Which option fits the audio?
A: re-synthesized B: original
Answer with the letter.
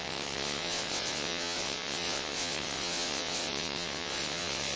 A